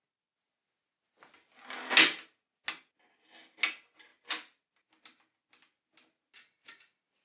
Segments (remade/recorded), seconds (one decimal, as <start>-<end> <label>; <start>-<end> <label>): 0.0-7.2 recorded